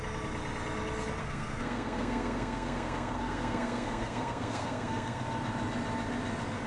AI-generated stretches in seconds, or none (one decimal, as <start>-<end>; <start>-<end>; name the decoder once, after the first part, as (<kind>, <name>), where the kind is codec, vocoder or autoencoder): 1.2-5.2 (codec, SNAC)